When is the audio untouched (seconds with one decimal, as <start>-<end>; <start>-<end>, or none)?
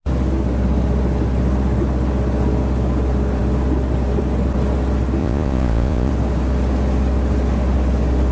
0.0-5.2; 6.1-8.3